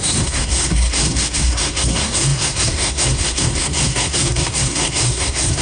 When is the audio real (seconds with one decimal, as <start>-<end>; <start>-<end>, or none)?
none